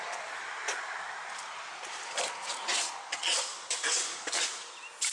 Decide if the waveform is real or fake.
real